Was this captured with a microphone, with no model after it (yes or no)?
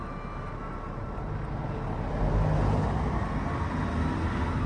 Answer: yes